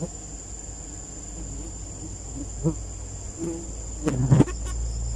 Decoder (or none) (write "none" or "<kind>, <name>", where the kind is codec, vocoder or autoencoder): none